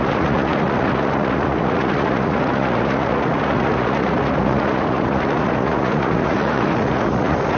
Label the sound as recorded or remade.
remade